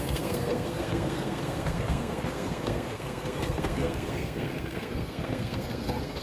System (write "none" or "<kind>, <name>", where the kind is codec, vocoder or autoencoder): codec, SNAC